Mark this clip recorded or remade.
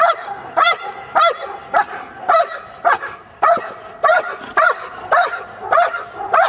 recorded